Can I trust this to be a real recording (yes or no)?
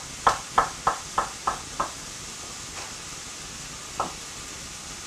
yes